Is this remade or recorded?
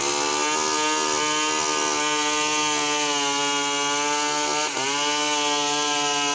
recorded